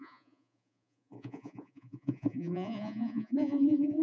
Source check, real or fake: fake